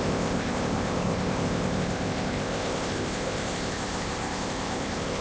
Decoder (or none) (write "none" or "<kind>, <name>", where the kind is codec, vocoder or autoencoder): codec, ZipCodec